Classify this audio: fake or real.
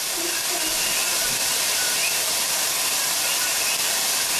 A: real